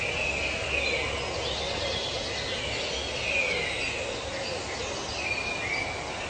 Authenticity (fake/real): real